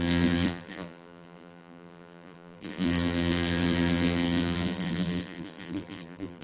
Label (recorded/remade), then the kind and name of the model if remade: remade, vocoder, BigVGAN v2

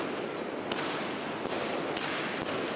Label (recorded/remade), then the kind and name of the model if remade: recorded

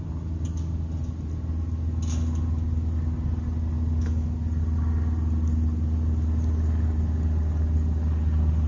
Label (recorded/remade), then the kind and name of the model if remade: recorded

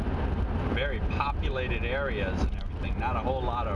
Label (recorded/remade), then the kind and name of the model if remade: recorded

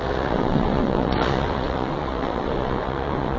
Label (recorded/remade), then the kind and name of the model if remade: remade, vocoder, WaveNeXt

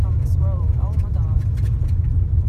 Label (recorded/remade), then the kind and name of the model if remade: recorded